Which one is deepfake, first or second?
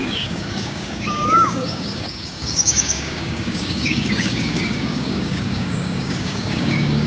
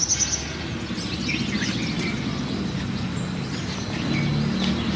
first